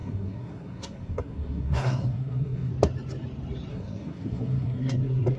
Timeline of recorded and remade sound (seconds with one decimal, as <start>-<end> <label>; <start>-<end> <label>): 0.0-2.7 remade; 2.7-3.7 recorded; 3.7-5.4 remade